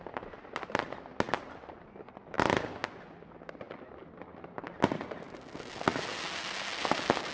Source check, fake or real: real